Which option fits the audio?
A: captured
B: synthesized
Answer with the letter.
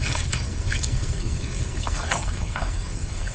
B